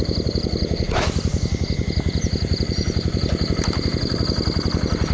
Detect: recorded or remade recorded